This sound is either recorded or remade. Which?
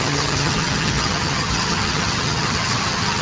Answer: remade